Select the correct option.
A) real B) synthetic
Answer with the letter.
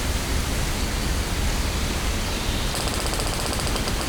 A